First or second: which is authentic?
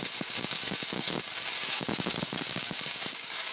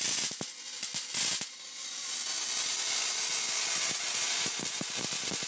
second